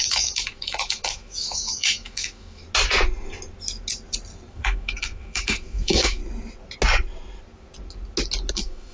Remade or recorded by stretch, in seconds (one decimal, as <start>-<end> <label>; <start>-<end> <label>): 0.0-2.6 remade; 2.6-4.5 recorded; 4.5-6.2 remade; 6.2-8.5 recorded; 8.5-8.9 remade